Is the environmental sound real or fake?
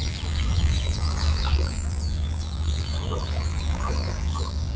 fake